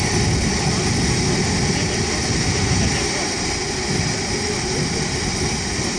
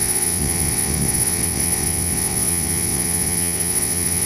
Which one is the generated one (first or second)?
second